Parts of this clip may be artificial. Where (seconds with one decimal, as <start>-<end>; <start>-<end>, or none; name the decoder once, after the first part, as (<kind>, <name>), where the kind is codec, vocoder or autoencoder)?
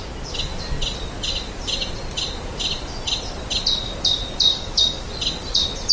4.5-5.1 (codec, DAC)